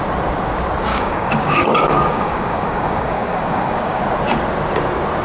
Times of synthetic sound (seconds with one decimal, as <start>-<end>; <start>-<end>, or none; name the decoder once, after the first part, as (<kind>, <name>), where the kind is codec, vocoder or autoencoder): 0.9-4.0 (codec, DAC)